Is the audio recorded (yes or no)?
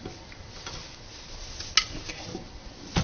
yes